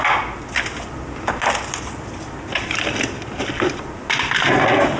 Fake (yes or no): no